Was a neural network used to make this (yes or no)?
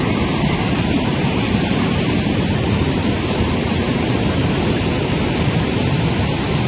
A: yes